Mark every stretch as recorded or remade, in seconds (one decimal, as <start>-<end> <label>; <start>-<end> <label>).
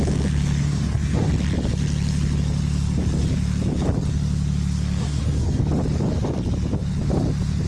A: 0.0-0.6 recorded; 0.6-1.3 remade; 1.3-5.0 recorded; 5.0-5.6 remade; 5.6-7.7 recorded